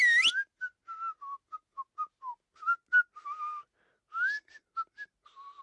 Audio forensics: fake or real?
real